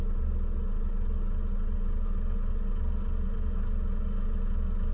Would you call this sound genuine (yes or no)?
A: yes